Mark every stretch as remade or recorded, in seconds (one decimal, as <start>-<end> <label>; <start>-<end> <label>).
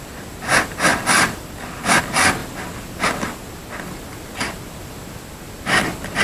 0.0-6.2 remade